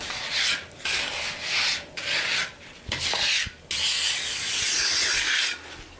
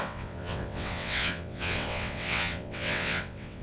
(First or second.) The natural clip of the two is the first